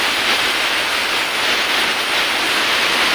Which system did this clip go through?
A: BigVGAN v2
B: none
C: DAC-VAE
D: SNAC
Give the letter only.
B